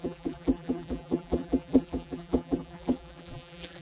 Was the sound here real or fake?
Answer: fake